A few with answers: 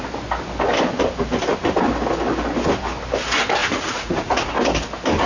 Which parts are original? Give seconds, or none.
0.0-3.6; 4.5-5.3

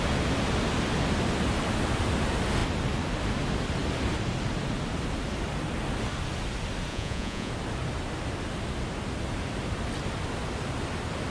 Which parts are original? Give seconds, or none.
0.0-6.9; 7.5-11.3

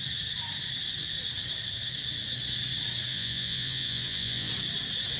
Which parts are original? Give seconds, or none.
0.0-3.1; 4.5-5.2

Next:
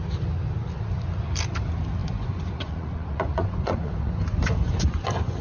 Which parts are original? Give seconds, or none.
0.0-2.0